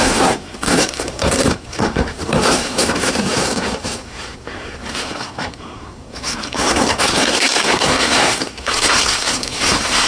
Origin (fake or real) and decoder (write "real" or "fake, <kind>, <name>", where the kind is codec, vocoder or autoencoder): fake, codec, SNAC